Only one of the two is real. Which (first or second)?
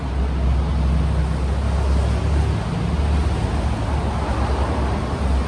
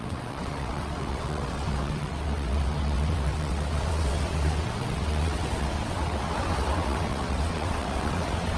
first